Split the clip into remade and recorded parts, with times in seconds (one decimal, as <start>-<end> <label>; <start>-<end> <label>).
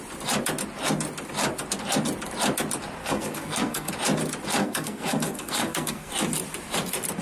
0.0-3.0 recorded; 3.0-3.9 remade; 3.9-4.6 recorded; 4.6-6.1 remade; 6.1-7.2 recorded